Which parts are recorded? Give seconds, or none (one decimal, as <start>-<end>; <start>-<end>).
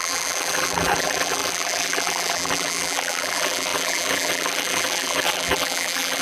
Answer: none